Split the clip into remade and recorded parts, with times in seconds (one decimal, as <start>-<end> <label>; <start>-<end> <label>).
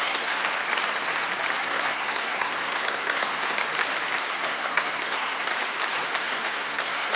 0.0-0.4 remade; 0.4-1.6 recorded; 1.6-3.6 remade; 3.6-4.3 recorded; 4.3-5.5 remade; 5.5-6.2 recorded; 6.2-7.2 remade